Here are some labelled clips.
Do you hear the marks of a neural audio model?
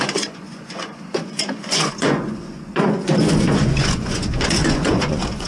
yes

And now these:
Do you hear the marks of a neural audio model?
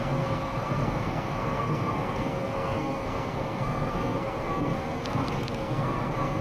yes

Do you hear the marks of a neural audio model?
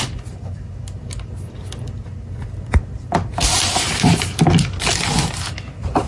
no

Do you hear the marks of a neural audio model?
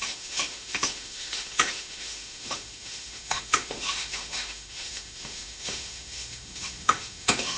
yes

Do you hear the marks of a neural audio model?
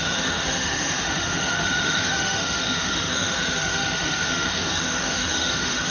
yes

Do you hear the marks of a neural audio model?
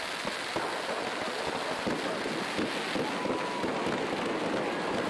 no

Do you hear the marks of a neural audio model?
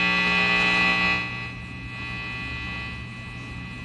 no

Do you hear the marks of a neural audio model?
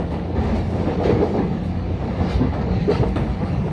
yes